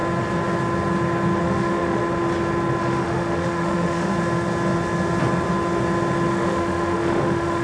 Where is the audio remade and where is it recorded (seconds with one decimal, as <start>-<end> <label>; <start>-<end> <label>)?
0.0-1.4 recorded; 1.4-2.0 remade; 2.0-2.8 recorded; 2.8-4.1 remade; 4.1-6.3 recorded; 6.3-7.6 remade